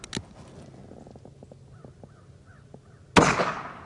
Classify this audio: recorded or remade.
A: recorded